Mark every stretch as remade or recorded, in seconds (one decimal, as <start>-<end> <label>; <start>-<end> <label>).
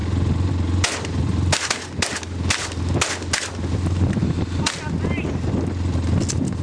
0.0-6.6 recorded